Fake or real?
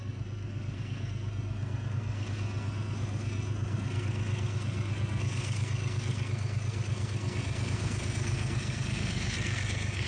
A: fake